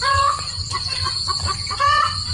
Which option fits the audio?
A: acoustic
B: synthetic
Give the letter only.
B